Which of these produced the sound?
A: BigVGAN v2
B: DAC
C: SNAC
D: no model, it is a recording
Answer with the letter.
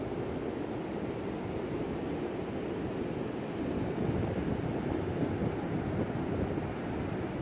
D